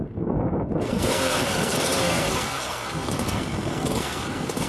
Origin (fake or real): fake